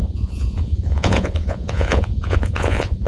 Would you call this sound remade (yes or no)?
yes